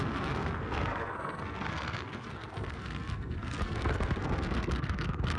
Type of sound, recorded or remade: remade